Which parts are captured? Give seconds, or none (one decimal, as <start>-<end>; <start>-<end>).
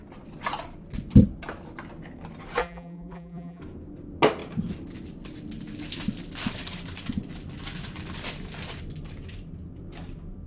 0.0-2.6; 3.6-10.5